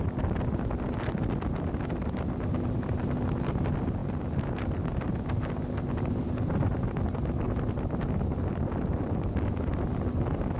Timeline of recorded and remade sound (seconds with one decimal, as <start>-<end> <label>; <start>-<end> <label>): 0.0-10.6 recorded